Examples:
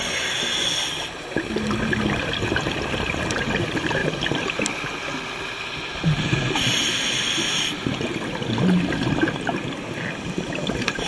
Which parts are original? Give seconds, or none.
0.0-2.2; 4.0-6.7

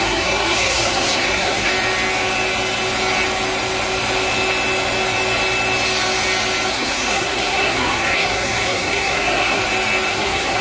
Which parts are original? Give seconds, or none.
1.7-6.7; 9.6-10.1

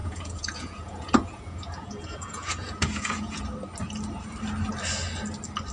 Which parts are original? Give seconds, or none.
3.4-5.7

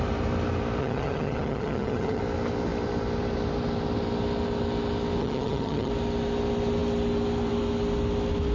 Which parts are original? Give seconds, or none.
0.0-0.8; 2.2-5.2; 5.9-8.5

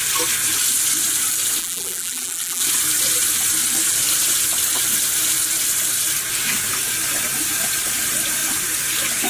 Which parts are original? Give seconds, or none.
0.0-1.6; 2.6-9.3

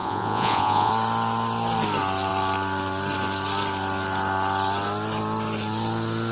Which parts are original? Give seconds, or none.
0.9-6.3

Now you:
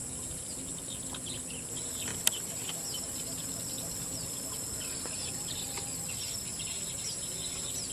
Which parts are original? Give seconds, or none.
0.5-7.9